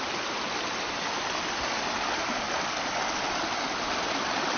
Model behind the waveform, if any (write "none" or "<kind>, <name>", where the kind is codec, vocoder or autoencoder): none